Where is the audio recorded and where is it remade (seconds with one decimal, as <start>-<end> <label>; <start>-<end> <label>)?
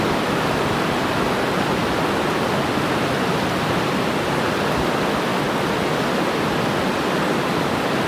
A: 0.0-8.1 recorded